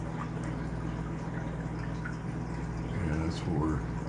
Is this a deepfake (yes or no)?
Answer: no